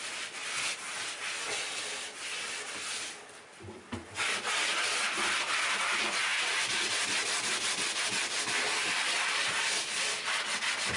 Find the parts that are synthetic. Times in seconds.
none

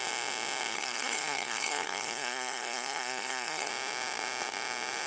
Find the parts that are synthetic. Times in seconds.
0.7-3.7 (codec, SNAC)

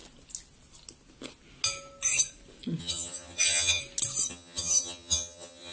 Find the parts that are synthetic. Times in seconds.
2.8-3.8 (vocoder, HiFi-GAN); 4.3-5.7